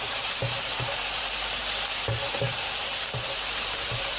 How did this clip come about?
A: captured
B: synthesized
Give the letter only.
B